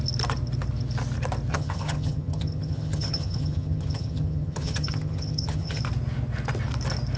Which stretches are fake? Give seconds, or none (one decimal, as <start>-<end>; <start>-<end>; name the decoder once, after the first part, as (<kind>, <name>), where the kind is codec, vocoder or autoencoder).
1.5-5.8 (vocoder, HiFi-GAN)